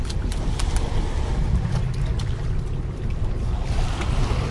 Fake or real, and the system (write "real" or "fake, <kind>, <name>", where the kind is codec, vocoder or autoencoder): real